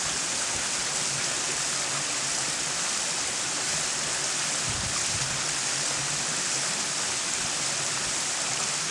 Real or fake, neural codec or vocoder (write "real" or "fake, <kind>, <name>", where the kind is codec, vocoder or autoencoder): real